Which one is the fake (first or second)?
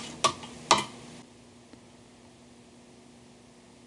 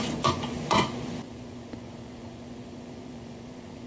second